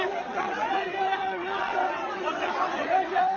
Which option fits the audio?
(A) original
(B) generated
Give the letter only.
B